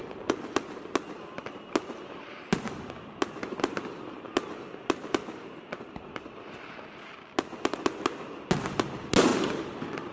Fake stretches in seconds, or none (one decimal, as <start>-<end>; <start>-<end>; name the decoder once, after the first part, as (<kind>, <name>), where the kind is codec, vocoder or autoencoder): none